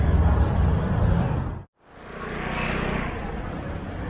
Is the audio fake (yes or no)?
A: no